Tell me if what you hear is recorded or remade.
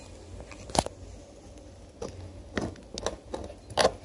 recorded